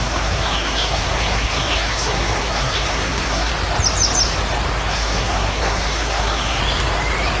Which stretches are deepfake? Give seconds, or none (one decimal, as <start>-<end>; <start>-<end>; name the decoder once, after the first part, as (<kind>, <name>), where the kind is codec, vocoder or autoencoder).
0.0-3.5 (codec, SNAC); 4.9-6.6